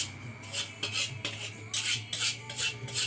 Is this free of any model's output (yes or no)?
yes